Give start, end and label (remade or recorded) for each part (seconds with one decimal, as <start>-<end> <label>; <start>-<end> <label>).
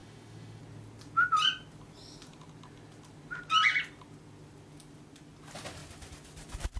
0.0-0.6 remade; 0.6-6.8 recorded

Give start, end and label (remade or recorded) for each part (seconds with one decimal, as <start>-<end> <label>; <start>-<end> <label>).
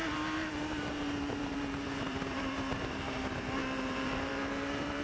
0.0-5.0 remade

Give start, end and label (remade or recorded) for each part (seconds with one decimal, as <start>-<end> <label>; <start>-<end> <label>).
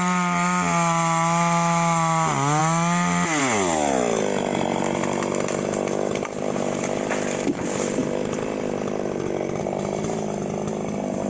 0.0-11.3 recorded